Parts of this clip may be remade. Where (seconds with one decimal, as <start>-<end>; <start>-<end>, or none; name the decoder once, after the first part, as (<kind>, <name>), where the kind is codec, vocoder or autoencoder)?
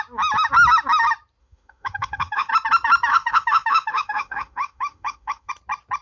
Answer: 1.4-2.5 (autoencoder, DAC-VAE); 3.1-5.5